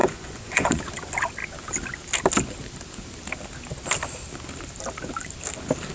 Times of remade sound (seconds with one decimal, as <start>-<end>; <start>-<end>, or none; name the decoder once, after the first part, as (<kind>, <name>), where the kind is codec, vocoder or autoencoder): 0.0-0.8 (vocoder, Vocos)